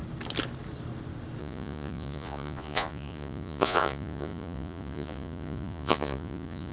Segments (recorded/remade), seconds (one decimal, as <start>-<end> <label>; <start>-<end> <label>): 0.0-1.4 recorded; 1.4-6.7 remade